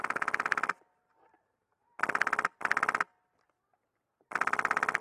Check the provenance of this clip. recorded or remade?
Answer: recorded